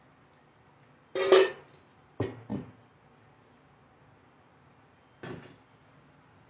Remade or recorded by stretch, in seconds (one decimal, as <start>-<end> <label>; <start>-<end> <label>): 0.0-6.5 recorded